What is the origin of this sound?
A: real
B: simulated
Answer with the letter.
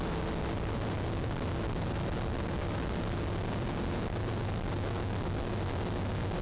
A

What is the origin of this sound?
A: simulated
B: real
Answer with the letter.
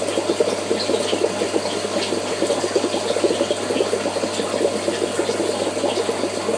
B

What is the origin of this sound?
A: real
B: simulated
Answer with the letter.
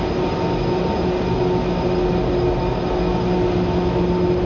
A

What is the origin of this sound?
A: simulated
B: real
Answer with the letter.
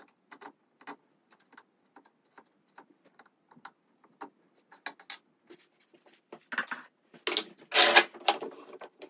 B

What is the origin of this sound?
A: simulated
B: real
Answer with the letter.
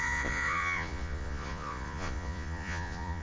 A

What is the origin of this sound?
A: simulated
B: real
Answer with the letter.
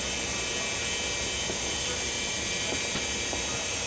B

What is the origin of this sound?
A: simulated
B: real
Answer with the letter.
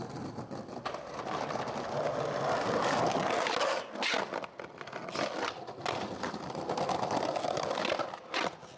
B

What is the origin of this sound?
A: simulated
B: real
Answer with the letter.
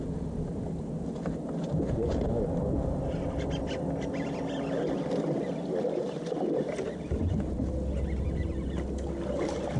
B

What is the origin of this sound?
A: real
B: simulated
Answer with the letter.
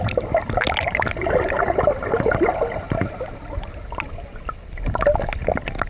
A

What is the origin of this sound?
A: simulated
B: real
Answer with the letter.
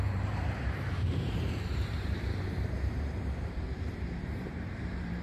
A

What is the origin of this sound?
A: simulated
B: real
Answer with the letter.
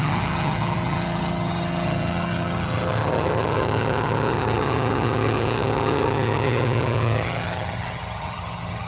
A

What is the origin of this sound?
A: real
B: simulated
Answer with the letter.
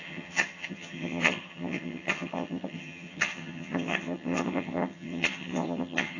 B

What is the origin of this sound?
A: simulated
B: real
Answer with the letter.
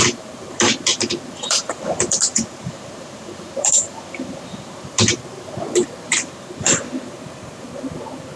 A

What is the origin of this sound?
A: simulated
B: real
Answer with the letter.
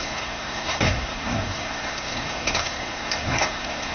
A